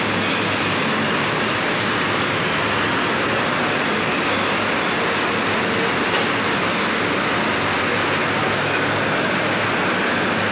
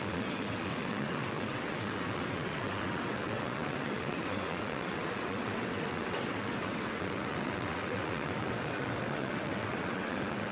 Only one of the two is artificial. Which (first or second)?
second